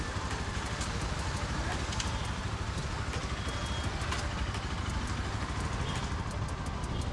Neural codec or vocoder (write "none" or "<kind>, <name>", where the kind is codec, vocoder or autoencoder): none